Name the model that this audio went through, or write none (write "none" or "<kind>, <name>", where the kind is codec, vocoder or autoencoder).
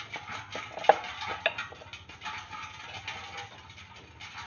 none